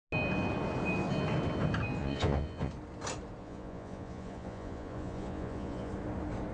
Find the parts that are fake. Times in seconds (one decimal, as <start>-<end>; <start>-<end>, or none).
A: 2.0-2.7; 3.4-5.9